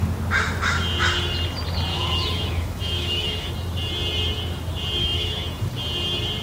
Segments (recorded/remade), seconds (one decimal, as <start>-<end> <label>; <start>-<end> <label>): 0.0-1.9 recorded; 1.9-3.5 remade; 3.5-5.0 recorded; 5.0-5.6 remade; 5.6-6.4 recorded